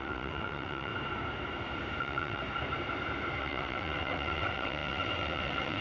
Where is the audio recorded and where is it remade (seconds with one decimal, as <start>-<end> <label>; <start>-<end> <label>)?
0.0-0.9 remade; 0.9-2.0 recorded; 2.0-2.4 remade; 2.4-3.4 recorded; 3.4-5.8 remade